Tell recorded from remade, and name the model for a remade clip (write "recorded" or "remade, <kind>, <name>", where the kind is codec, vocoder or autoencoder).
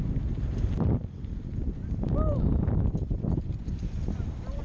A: remade, vocoder, BigVGAN v2